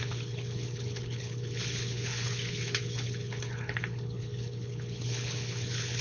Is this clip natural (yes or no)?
no